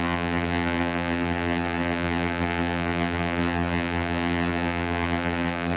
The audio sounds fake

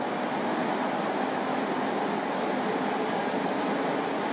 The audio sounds real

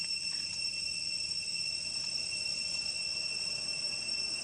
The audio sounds real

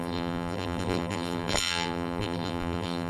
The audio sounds fake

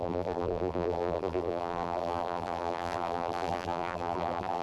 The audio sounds fake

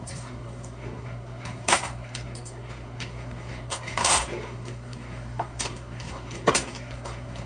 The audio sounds fake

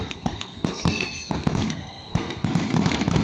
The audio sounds fake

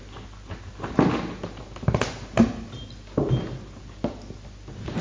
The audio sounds real